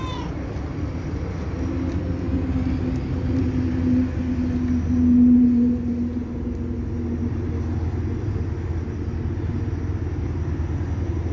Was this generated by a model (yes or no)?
no